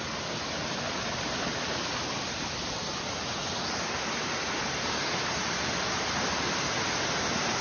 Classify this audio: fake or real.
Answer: real